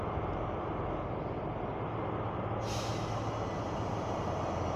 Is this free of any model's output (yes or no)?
yes